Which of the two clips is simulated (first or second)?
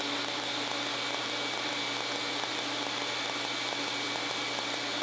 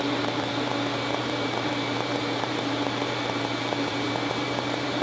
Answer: second